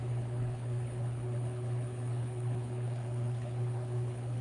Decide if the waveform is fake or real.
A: fake